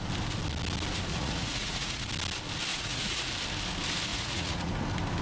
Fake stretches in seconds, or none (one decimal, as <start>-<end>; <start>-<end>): 1.1-2.1; 2.7-3.3; 4.1-4.7